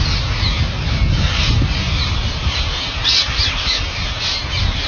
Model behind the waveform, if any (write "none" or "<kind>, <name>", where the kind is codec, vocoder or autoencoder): none